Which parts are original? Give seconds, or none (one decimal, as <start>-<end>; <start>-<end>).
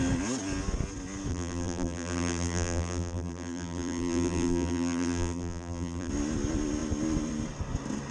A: 0.0-1.3; 6.1-8.1